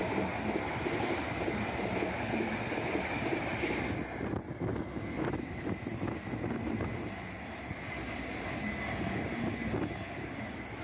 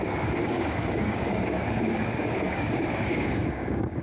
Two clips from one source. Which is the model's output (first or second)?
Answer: second